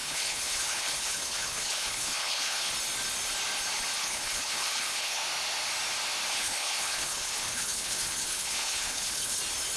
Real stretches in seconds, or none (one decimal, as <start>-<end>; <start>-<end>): 2.7-4.0; 5.2-6.3; 9.4-9.8